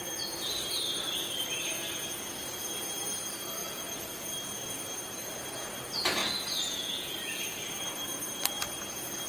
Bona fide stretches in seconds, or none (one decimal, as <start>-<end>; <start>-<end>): 0.0-3.6; 4.3-6.2; 7.6-9.3